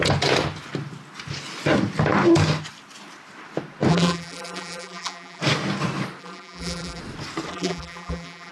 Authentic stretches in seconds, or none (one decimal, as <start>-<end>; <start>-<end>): 0.0-3.9; 5.4-6.2; 7.0-7.5